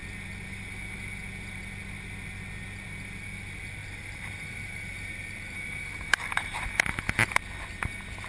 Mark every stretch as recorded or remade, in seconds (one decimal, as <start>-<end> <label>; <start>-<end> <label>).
0.0-3.8 recorded; 3.8-6.7 remade; 6.7-8.3 recorded

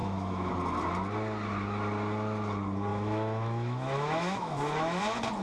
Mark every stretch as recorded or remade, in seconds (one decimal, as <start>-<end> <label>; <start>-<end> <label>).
0.0-0.5 remade; 0.5-2.9 recorded; 2.9-5.0 remade; 5.0-5.4 recorded